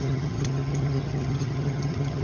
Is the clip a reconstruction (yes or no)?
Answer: yes